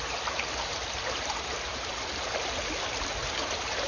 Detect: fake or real real